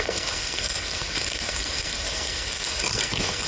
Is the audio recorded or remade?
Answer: remade